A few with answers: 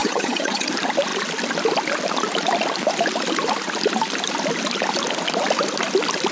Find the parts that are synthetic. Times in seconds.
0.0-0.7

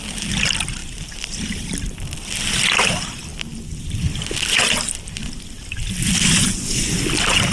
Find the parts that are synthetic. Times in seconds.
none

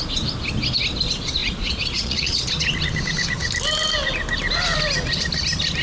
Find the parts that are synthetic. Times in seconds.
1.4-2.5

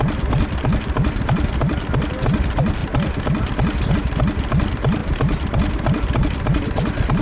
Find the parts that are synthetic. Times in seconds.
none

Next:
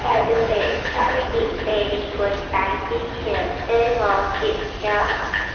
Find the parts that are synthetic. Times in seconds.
0.0-1.7; 5.0-5.5

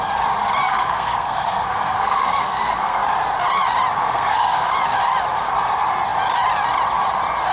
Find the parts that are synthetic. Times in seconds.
0.6-3.0; 4.0-4.7